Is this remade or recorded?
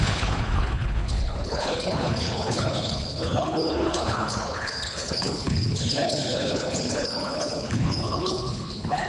remade